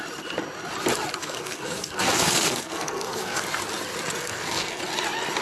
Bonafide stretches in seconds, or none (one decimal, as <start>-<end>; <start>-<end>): 0.0-1.2; 3.4-4.2; 4.8-5.4